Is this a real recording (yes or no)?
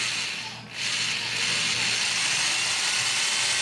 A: yes